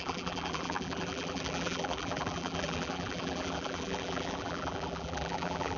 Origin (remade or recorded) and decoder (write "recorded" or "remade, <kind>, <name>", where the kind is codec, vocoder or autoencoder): remade, vocoder, BigVGAN v2